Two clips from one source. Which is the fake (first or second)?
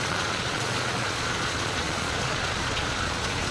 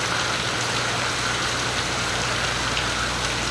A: first